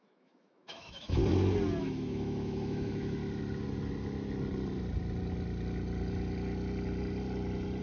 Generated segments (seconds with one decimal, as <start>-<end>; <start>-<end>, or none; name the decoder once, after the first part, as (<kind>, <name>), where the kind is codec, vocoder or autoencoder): 0.0-1.2 (autoencoder, DAC-VAE); 1.8-3.2